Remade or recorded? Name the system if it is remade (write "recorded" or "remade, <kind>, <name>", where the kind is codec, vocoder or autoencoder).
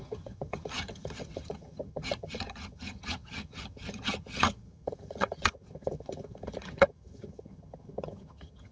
remade, vocoder, HiFi-GAN